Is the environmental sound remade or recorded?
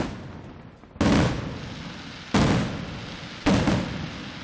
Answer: recorded